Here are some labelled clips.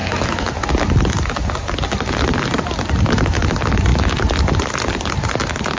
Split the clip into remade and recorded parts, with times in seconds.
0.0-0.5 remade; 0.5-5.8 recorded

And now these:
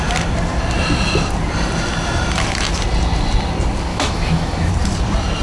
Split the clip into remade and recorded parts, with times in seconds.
0.0-3.9 recorded; 3.9-4.7 remade; 4.7-5.4 recorded

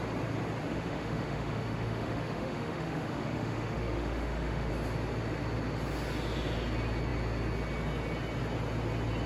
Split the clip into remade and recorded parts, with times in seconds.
0.0-0.7 recorded; 0.7-4.7 remade; 4.7-9.3 recorded